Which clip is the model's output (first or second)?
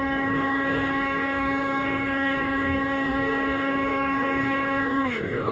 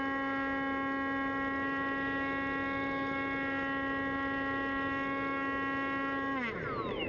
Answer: first